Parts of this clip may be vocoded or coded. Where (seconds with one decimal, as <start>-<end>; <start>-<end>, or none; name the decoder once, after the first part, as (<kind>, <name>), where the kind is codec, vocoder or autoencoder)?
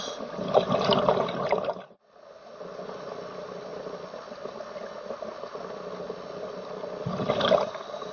none